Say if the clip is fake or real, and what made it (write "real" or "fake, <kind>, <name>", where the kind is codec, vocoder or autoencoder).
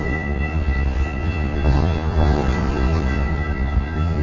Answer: fake, vocoder, Vocos